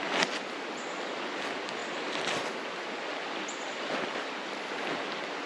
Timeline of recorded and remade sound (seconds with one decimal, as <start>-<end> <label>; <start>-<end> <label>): 0.0-5.5 recorded